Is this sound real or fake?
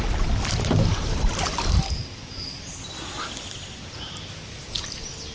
real